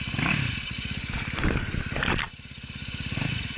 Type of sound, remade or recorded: recorded